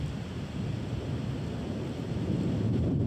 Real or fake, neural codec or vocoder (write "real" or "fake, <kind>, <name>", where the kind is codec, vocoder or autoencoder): fake, vocoder, BigVGAN v2